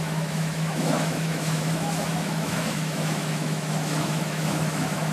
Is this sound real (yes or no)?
no